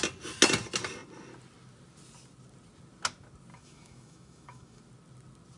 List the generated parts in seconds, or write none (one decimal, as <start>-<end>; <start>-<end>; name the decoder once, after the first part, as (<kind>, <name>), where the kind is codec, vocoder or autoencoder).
3.5-4.8 (autoencoder, DAC-VAE)